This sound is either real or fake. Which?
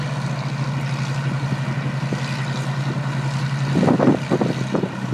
real